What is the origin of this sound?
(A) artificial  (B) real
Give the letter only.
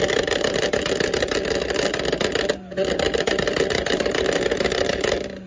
B